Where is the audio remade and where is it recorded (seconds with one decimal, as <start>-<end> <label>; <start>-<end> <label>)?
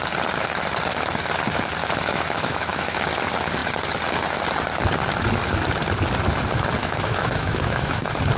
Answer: 0.0-1.8 recorded; 1.8-3.1 remade; 3.1-6.8 recorded; 6.8-8.0 remade; 8.0-8.4 recorded